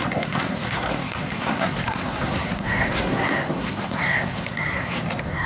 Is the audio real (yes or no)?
no